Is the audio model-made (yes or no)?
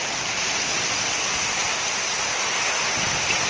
no